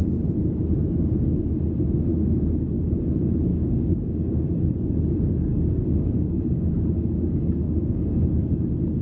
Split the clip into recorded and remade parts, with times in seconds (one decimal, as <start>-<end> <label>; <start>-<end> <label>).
0.0-2.1 recorded; 2.1-3.0 remade; 3.0-3.5 recorded; 3.5-8.1 remade; 8.1-9.0 recorded